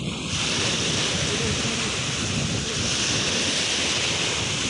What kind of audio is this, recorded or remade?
recorded